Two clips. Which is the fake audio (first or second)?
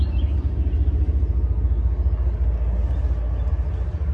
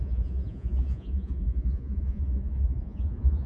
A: second